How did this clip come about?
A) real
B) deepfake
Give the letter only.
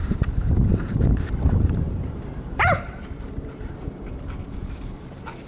B